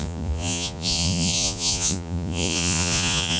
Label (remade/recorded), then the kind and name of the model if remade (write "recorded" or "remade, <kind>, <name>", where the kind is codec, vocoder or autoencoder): remade, vocoder, Vocos